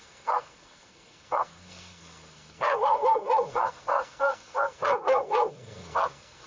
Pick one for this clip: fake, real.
fake